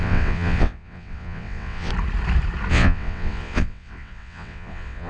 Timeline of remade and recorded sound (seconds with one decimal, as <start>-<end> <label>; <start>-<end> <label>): 0.0-1.9 remade; 1.9-2.7 recorded; 2.7-5.1 remade